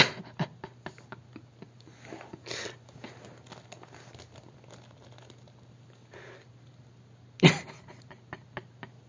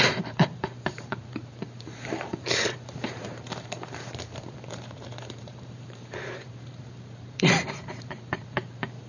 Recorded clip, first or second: first